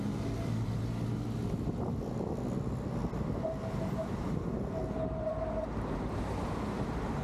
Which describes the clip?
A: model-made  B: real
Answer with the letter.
B